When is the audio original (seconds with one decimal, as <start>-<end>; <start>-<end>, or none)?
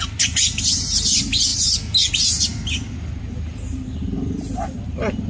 0.0-5.3